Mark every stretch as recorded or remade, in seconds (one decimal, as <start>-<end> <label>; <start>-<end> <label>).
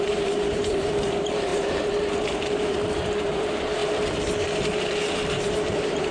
0.0-3.8 remade; 3.8-5.1 recorded; 5.1-6.1 remade